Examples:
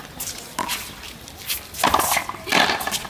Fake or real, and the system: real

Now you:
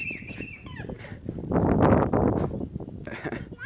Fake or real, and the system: real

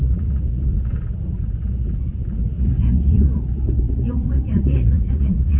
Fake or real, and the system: fake, vocoder, Vocos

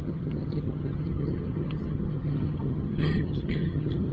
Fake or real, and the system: fake, vocoder, HiFi-GAN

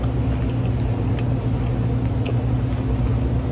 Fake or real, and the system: real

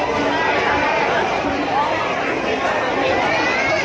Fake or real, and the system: real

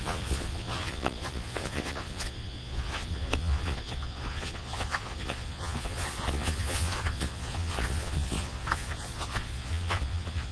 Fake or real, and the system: fake, vocoder, Vocos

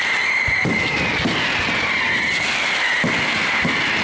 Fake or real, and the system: real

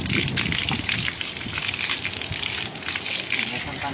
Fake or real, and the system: real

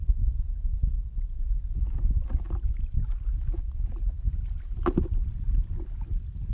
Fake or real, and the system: real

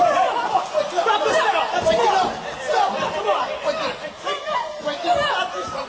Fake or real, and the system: real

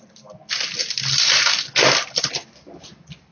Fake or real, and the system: real